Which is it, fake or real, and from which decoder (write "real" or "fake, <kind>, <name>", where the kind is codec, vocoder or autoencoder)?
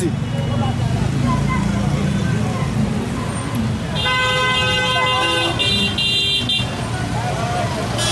real